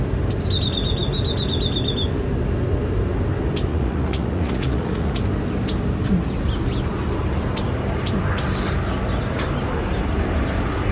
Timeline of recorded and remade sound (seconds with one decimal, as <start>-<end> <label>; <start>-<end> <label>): 0.0-3.7 recorded; 3.7-5.2 remade; 5.2-10.9 recorded